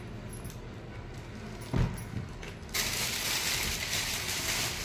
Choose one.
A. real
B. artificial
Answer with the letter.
A